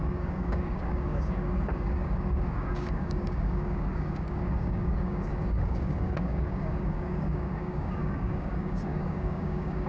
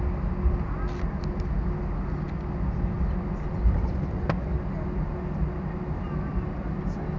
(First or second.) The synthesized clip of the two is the first